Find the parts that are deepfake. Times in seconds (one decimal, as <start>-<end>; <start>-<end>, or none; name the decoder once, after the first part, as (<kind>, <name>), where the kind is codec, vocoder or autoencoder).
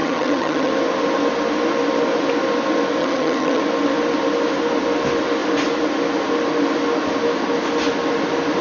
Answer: 0.0-0.7 (vocoder, HiFi-GAN); 3.0-3.6